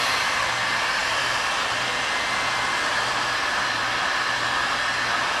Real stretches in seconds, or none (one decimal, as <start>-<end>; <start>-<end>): 0.0-1.0; 4.2-5.4